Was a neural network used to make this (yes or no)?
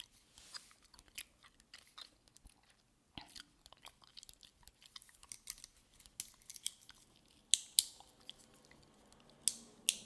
no